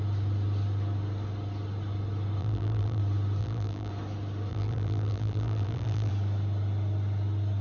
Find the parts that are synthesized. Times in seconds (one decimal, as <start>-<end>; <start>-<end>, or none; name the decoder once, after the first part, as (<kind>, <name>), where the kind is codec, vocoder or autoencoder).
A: 2.4-3.0 (vocoder, BigVGAN v2); 3.4-3.9; 4.5-6.1